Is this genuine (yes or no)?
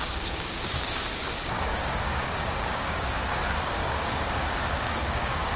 no